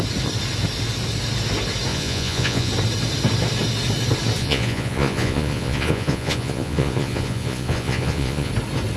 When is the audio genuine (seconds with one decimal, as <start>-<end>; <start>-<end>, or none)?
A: 0.0-1.9; 2.7-4.4; 8.5-9.0